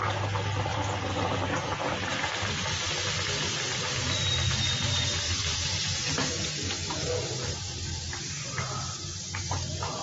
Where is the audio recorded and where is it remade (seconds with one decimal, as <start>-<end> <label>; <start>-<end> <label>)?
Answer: 0.0-0.7 recorded; 0.7-2.5 remade; 2.5-10.0 recorded